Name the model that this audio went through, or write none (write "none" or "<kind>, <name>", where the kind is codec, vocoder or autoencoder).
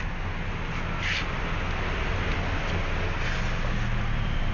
none